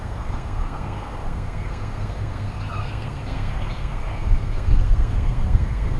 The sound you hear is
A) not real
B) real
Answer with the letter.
A